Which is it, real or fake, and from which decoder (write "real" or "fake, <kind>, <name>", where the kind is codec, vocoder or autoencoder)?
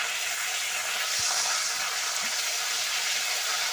real